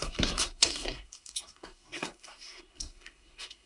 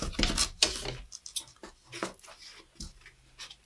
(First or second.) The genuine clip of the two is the second